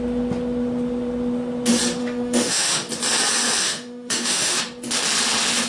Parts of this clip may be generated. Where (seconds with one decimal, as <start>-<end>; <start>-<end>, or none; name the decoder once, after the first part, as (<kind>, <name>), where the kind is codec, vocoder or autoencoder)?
2.0-2.9 (autoencoder, DAC-VAE); 3.6-4.6